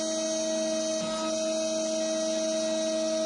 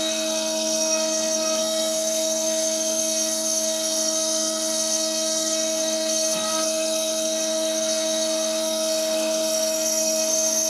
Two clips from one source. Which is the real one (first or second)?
first